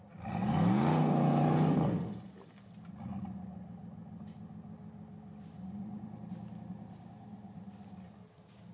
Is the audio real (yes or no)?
yes